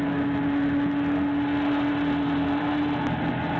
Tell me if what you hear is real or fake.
real